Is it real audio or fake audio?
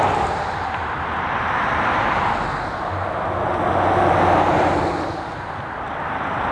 real